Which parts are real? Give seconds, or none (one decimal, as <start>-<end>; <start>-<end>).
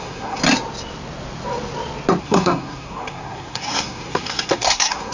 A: 0.4-2.2